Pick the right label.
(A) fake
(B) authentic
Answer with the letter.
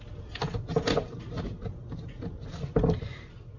B